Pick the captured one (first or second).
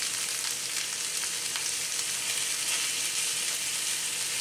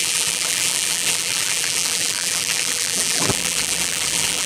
first